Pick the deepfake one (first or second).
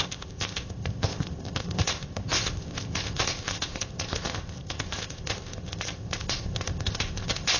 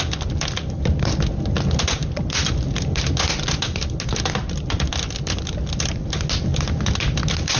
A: first